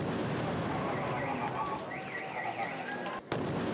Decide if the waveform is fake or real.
real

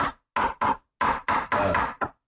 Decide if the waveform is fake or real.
real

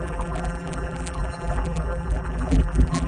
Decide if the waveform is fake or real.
fake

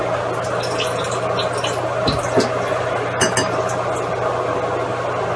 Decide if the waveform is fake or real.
real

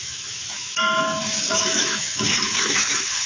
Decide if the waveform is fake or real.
fake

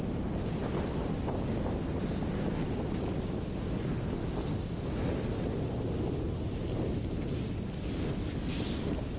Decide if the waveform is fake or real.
real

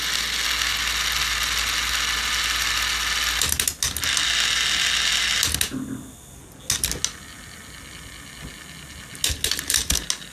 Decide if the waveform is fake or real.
real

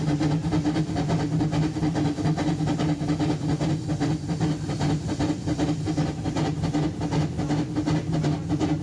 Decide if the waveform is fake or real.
real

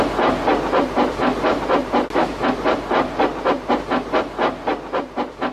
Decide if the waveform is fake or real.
real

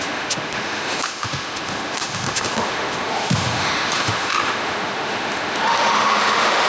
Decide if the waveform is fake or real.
fake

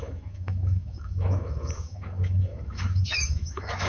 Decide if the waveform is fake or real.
fake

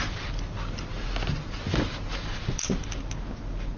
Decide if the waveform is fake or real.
real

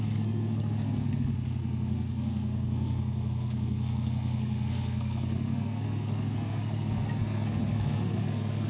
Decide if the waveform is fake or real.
fake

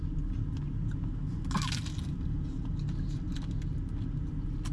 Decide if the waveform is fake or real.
real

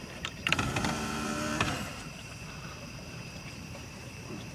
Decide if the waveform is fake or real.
fake